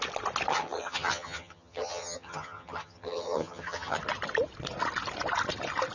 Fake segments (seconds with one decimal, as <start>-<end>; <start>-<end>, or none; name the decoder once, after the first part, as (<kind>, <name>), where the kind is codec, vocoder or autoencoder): 0.5-4.0 (vocoder, HiFi-GAN)